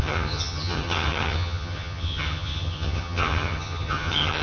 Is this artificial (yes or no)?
yes